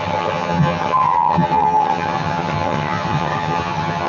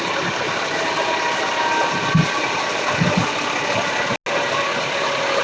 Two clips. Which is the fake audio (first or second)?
first